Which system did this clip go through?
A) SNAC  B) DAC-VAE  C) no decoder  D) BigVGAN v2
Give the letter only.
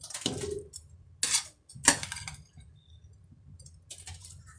C